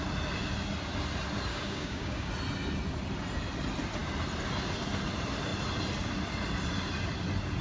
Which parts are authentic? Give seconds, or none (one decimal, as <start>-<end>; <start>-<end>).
0.0-1.5; 2.3-7.6